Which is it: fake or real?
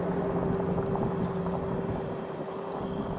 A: real